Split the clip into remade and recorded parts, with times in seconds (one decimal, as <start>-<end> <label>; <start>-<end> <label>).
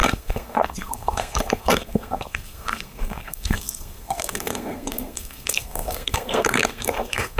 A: 0.0-7.4 remade